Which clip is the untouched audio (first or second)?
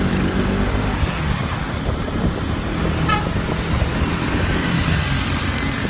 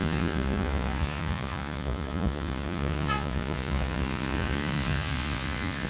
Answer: first